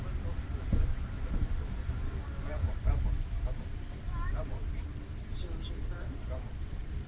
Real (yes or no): yes